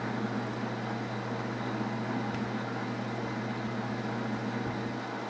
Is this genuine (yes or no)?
yes